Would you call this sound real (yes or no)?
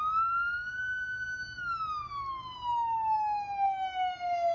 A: yes